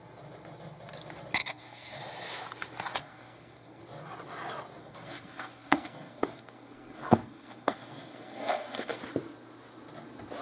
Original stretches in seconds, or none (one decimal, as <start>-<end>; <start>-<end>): 0.0-1.4; 2.0-3.0; 3.8-4.8; 9.0-10.4